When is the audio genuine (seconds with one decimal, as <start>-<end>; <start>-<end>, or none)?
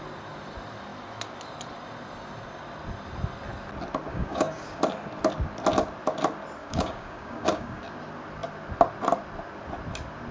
0.0-4.1; 4.8-6.6; 7.8-10.3